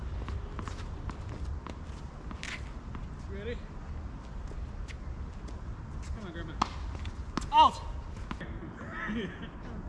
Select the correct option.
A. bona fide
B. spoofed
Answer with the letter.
A